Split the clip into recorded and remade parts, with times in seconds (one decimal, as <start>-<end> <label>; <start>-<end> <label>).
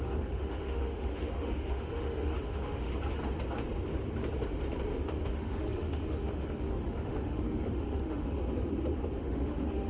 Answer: 0.0-2.9 remade; 2.9-5.2 recorded; 5.2-8.4 remade; 8.4-9.2 recorded; 9.2-9.9 remade